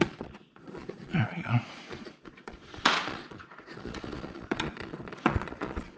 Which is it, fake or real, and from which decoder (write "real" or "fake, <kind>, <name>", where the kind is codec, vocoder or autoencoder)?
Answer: fake, vocoder, Vocos